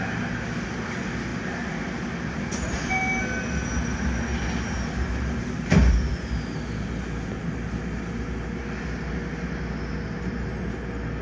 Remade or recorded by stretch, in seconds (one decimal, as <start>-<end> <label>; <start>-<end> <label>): 0.0-11.2 recorded